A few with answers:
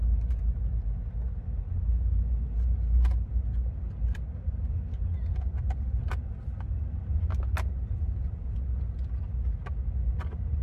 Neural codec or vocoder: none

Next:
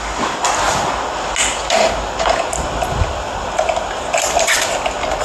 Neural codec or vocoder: none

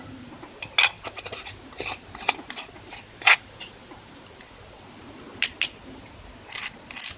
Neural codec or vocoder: none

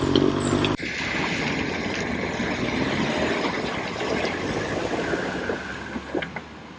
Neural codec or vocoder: none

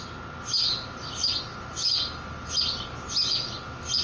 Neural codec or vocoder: none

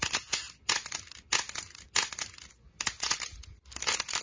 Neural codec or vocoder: none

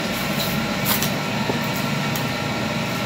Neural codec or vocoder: none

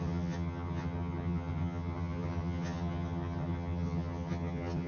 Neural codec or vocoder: vocoder, HiFi-GAN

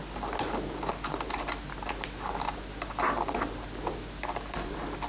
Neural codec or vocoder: none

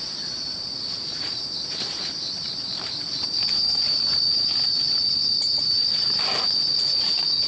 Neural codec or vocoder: vocoder, BigVGAN v2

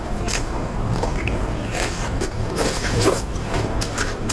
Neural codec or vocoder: codec, DAC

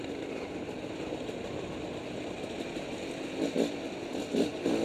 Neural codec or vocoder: none